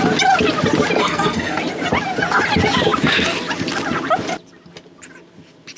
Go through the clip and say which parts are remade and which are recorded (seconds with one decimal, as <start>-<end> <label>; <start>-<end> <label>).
0.0-1.0 recorded; 1.0-1.6 remade; 1.6-5.8 recorded